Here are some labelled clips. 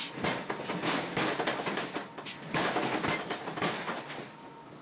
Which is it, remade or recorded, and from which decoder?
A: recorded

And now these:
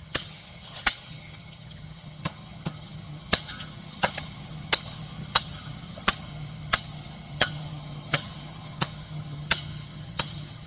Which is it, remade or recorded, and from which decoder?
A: remade, vocoder, HiFi-GAN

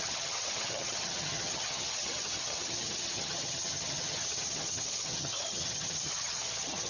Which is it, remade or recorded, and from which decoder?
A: remade, vocoder, HiFi-GAN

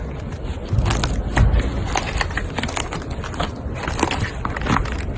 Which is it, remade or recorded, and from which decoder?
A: recorded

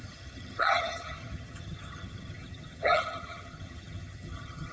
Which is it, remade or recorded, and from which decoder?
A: remade, vocoder, HiFi-GAN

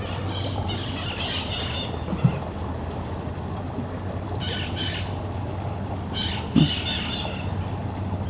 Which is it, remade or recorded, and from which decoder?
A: recorded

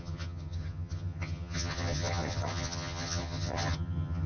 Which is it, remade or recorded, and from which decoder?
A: remade, vocoder, HiFi-GAN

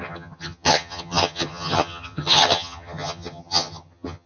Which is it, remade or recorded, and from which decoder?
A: remade, vocoder, HiFi-GAN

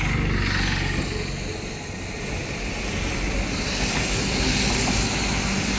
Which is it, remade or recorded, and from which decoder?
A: recorded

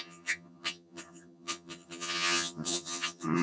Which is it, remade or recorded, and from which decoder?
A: remade, vocoder, HiFi-GAN